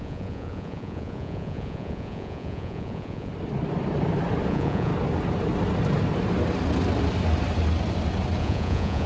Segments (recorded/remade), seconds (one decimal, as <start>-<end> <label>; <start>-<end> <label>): 0.0-3.3 remade; 3.3-4.5 recorded; 4.5-4.9 remade; 4.9-8.4 recorded; 8.4-9.1 remade